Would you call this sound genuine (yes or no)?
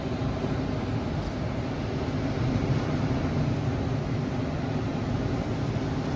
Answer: yes